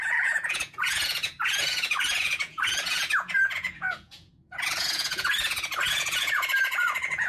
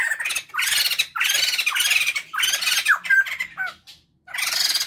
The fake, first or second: first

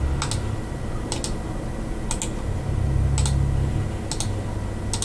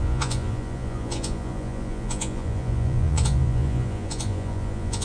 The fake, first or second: second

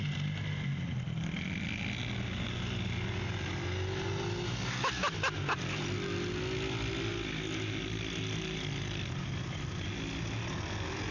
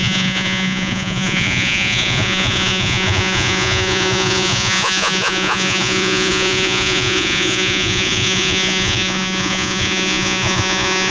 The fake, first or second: second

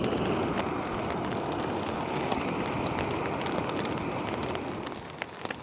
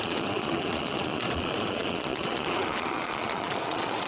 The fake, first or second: second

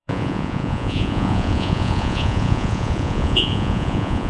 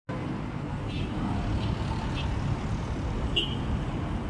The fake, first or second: first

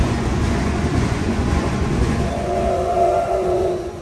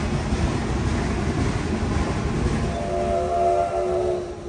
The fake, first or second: first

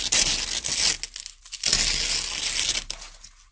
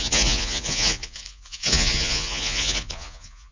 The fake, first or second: second